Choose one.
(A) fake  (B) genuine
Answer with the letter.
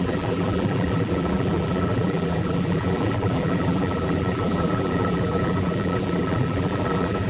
A